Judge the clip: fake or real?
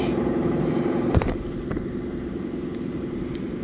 fake